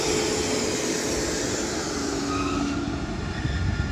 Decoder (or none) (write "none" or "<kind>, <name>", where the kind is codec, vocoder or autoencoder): none